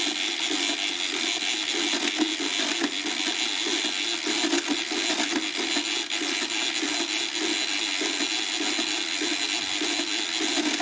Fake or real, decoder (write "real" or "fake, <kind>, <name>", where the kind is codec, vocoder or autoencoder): real